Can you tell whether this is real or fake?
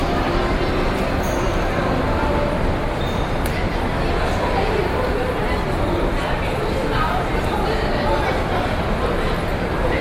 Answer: real